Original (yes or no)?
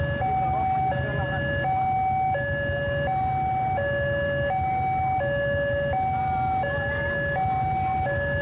yes